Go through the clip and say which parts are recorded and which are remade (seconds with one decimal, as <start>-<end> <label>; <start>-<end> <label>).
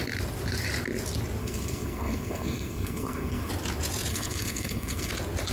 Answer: 0.0-1.4 recorded; 1.4-3.5 remade; 3.5-4.1 recorded; 4.1-5.1 remade; 5.1-5.5 recorded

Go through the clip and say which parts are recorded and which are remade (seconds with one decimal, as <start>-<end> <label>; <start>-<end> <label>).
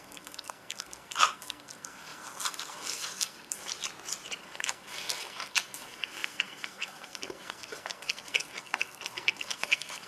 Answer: 0.0-3.7 remade; 3.7-4.4 recorded; 4.4-10.1 remade